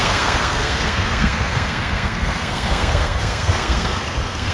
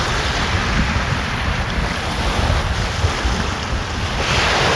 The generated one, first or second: first